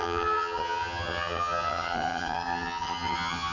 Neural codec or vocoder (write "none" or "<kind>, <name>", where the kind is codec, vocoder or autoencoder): vocoder, HiFi-GAN